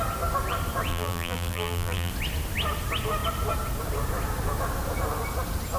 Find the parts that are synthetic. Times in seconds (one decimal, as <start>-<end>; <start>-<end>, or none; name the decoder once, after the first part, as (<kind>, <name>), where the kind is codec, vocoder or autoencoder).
0.9-2.1 (vocoder, BigVGAN v2)